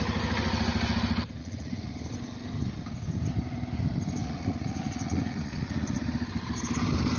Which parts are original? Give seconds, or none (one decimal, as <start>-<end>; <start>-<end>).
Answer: 0.0-1.4; 1.9-4.2; 6.0-7.2